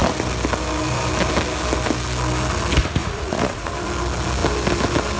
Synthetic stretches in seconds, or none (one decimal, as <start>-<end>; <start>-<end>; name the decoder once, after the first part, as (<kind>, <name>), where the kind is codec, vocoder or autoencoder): 3.0-3.7 (vocoder, Vocos)